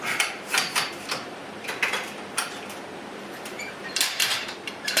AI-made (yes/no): yes